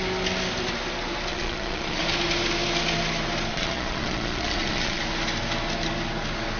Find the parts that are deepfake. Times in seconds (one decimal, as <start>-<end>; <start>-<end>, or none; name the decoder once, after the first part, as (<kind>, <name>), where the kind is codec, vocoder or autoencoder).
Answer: 1.3-2.0 (vocoder, Vocos); 3.5-5.0